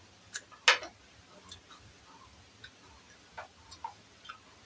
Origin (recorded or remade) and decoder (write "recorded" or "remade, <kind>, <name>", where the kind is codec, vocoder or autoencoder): recorded